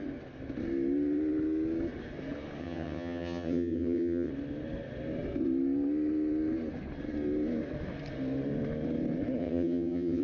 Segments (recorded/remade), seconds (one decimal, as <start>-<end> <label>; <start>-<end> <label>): 0.0-2.6 recorded; 2.6-4.3 remade; 4.3-9.4 recorded; 9.4-10.2 remade